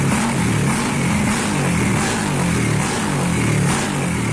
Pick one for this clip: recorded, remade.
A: recorded